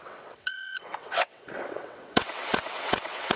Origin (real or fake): fake